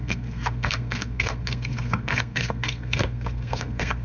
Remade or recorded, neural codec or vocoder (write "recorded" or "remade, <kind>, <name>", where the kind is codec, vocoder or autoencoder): remade, codec, SNAC